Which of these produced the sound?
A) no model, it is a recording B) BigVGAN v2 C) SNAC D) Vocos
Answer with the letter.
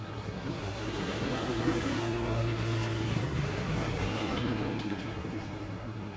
C